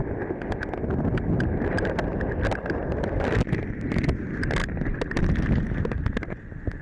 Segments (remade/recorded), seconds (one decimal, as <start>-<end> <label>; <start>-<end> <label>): 0.0-6.8 recorded